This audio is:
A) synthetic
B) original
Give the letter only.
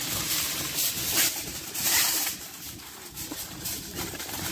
A